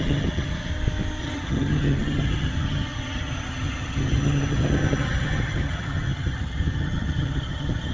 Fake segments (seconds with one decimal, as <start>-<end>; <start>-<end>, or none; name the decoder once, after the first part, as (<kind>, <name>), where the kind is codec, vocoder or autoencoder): 0.0-0.7 (vocoder, HiFi-GAN); 1.2-7.9